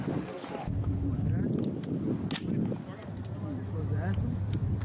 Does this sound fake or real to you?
real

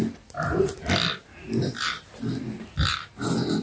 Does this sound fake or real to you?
fake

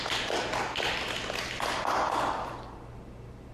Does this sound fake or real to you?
real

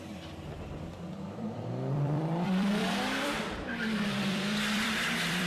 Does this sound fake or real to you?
fake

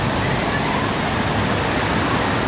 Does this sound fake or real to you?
real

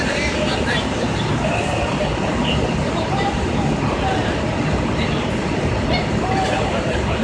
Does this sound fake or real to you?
fake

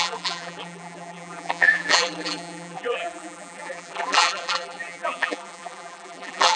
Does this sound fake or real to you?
fake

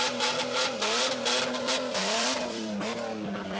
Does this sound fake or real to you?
fake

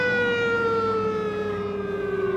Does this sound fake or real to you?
real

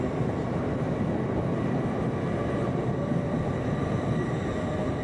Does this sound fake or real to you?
real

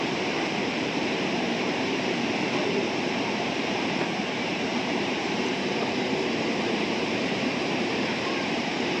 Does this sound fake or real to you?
fake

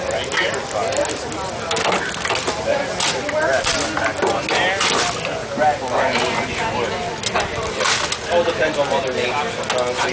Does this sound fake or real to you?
real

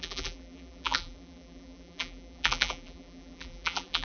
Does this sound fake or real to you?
fake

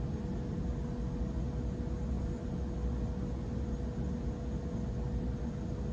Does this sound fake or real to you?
real